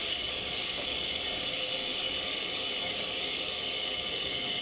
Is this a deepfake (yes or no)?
yes